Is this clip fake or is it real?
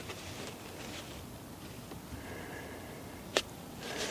real